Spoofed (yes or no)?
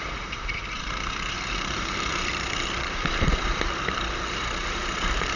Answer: yes